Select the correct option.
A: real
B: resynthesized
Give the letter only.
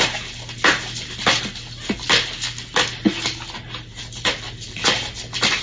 A